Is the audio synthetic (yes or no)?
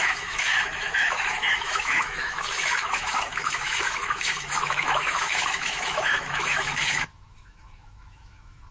yes